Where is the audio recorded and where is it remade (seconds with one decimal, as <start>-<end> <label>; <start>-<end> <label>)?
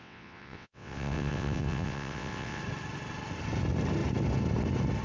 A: 0.0-2.6 remade; 2.6-5.0 recorded